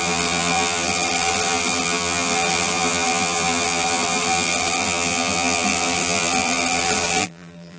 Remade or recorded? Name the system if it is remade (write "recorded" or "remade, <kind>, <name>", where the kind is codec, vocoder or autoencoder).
remade, vocoder, BigVGAN v2